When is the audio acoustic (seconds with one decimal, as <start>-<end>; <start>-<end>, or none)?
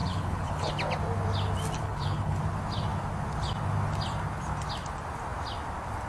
0.7-1.8; 2.4-6.1